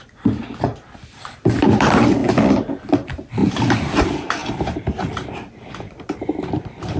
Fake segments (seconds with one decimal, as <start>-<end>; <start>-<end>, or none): 0.0-2.2; 2.9-7.0